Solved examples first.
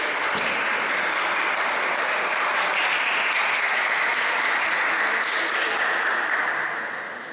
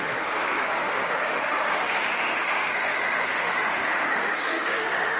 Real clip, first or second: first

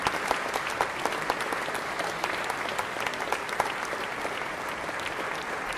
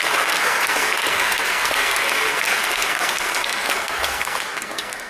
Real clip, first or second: first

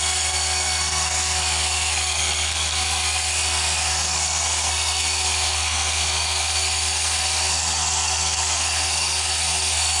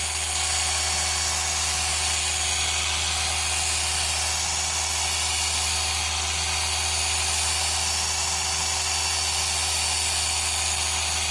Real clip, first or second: second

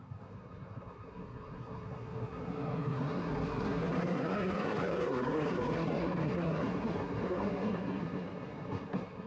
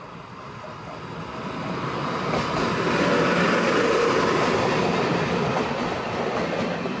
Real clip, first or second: second